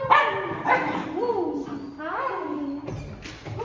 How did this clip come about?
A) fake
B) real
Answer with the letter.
B